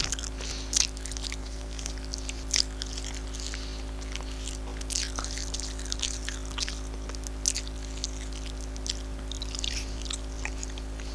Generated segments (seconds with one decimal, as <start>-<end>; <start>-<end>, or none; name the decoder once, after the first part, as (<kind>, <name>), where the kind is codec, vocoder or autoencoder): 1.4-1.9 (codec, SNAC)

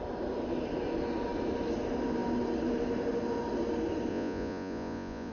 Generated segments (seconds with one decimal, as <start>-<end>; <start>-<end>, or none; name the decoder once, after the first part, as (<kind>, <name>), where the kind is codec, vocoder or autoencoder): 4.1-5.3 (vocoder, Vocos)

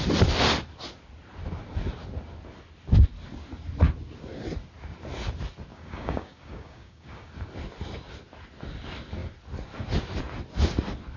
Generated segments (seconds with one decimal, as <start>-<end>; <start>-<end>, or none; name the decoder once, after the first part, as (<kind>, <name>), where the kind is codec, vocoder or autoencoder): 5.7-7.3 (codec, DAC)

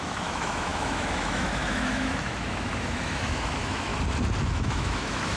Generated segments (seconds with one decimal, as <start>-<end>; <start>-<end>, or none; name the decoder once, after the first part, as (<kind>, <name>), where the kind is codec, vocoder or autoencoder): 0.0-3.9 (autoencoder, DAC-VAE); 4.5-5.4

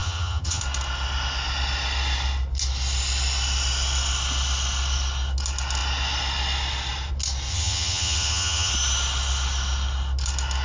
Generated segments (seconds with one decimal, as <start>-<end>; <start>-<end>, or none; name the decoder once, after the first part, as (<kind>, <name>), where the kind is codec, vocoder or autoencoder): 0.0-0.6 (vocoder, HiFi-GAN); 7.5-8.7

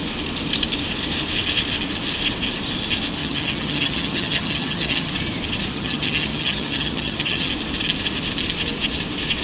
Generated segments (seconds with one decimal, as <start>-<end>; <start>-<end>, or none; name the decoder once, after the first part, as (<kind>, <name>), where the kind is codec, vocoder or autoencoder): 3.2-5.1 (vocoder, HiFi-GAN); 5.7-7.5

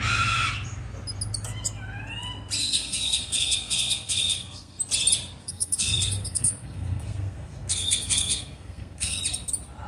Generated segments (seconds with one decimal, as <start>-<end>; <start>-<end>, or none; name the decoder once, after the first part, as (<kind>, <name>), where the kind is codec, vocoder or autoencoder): 2.6-4.8 (codec, SNAC); 5.4-9.2